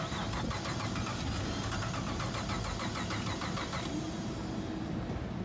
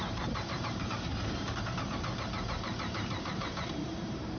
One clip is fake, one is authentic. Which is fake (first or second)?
second